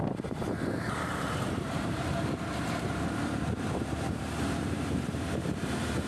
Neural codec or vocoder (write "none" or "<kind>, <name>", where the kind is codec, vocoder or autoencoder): vocoder, BigVGAN v2